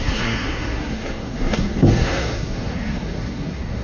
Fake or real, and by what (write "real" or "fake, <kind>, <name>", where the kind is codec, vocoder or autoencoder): fake, codec, SNAC